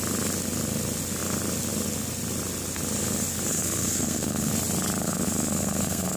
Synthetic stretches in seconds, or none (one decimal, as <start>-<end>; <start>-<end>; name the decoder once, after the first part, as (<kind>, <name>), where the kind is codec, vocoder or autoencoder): 3.5-4.5 (codec, SNAC); 5.0-6.2